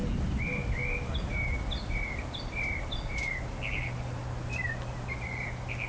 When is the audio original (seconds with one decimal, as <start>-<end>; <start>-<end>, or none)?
0.0-5.9